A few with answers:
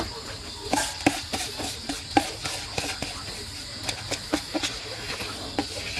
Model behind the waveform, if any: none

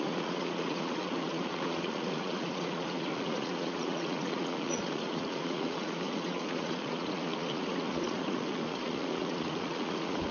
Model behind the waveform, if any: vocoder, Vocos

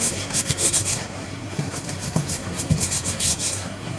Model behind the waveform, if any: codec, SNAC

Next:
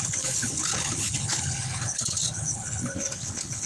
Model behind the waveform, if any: codec, HILCodec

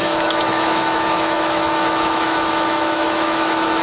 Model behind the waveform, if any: autoencoder, DAC-VAE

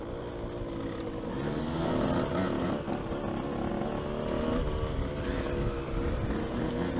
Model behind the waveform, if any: none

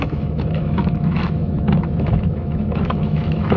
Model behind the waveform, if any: autoencoder, DAC-VAE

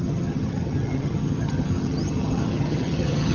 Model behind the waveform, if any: vocoder, HiFi-GAN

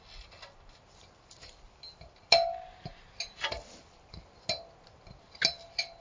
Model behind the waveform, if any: none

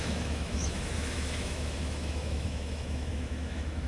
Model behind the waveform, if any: autoencoder, DAC-VAE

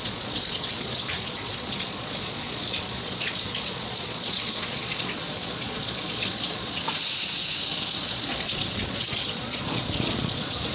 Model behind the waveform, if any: vocoder, Vocos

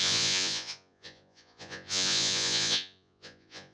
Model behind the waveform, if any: vocoder, Vocos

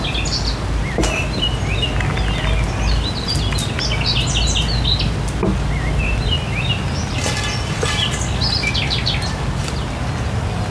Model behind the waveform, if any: none